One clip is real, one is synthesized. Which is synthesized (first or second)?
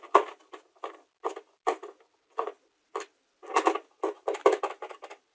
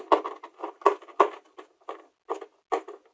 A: first